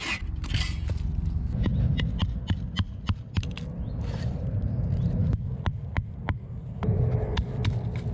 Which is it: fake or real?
real